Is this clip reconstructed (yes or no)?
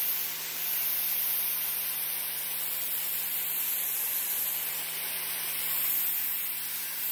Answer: no